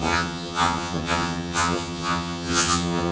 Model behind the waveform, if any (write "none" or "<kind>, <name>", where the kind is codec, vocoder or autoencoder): vocoder, HiFi-GAN